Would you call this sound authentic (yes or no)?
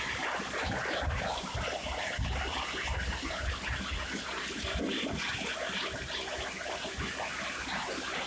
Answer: yes